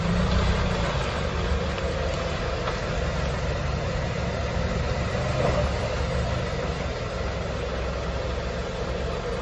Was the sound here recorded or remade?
recorded